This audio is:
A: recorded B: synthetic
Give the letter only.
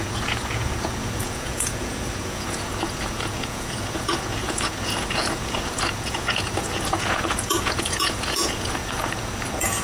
B